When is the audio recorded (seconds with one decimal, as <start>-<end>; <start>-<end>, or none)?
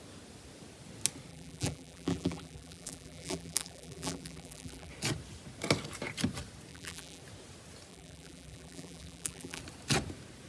0.0-1.3; 4.9-6.7; 7.2-7.9; 9.6-10.5